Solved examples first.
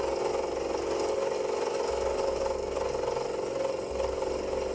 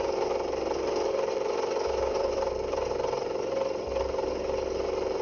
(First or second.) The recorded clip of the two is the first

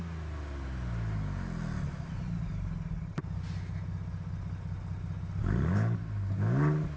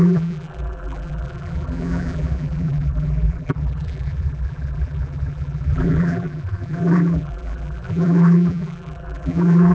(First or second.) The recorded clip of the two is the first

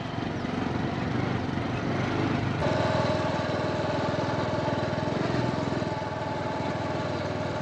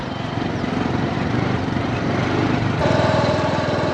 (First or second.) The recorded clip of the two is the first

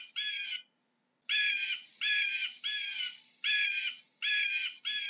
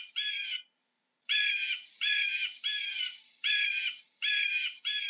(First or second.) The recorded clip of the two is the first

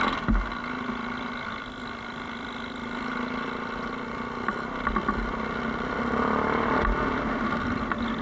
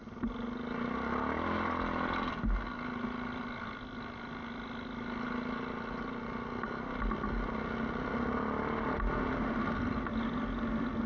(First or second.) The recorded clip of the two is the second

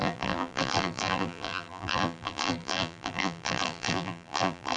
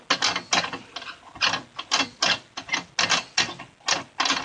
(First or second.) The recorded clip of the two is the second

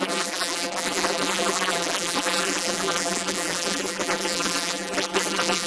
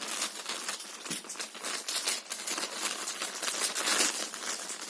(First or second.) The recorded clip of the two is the second